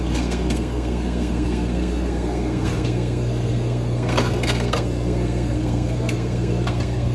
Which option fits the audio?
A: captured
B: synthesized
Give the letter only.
B